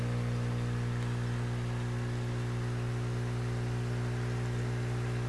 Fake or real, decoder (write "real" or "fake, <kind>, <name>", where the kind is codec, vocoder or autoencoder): real